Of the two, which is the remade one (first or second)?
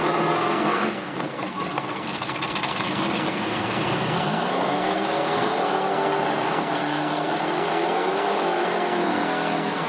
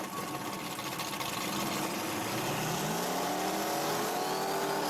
first